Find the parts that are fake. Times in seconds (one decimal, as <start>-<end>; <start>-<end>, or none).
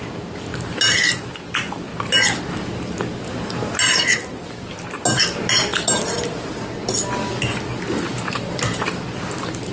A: none